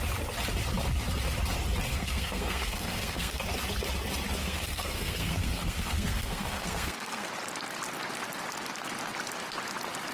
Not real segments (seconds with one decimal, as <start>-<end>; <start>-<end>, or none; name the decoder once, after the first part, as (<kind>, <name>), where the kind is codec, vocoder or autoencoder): 1.9-3.4 (codec, SNAC); 4.4-7.3